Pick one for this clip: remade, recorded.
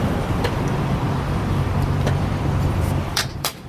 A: remade